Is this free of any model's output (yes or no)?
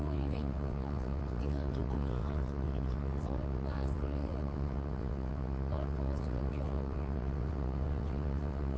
no